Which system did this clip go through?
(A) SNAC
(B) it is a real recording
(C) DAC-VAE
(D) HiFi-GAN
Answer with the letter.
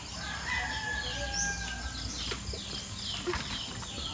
B